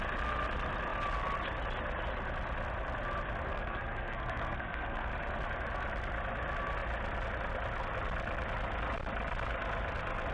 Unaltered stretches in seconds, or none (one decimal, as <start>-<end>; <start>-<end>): 0.0-3.5; 5.1-10.3